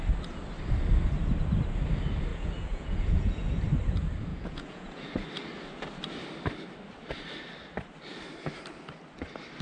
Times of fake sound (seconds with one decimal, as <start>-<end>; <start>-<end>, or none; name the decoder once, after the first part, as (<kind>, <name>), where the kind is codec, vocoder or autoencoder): 2.3-3.5 (vocoder, Vocos); 4.3-5.1

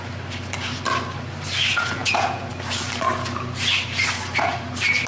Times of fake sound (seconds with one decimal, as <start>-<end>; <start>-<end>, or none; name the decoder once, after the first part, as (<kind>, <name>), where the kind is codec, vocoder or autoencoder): 2.0-2.5 (vocoder, Vocos)

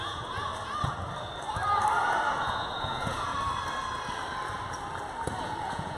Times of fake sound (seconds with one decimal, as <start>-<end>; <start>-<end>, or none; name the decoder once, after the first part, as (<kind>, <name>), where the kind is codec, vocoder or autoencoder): 0.0-0.5 (vocoder, Vocos); 2.3-3.3; 5.4-6.0

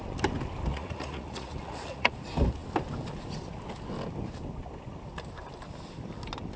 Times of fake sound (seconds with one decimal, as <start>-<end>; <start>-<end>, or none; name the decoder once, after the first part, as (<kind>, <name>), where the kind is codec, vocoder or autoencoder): 0.7-2.1 (vocoder, Vocos)

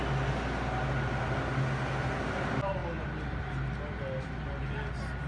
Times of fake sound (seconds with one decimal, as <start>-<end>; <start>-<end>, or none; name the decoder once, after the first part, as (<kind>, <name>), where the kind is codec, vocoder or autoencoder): none